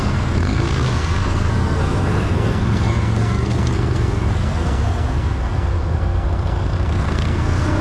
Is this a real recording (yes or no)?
no